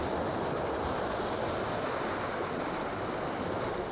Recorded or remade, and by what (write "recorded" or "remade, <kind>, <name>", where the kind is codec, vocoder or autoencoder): recorded